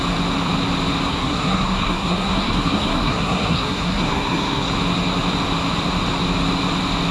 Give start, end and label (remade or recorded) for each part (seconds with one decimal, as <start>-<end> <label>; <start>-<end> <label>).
0.0-1.1 recorded; 1.1-4.7 remade; 4.7-7.1 recorded